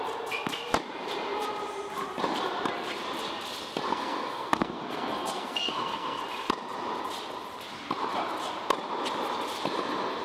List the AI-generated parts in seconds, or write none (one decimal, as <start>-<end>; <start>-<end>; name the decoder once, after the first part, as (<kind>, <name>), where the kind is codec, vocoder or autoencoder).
3.9-6.2 (codec, SNAC)